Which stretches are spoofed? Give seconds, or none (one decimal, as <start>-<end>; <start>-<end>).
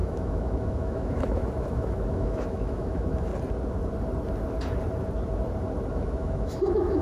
0.0-3.3; 5.9-7.0